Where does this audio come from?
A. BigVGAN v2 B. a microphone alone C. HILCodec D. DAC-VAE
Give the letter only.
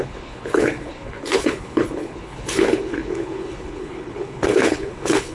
C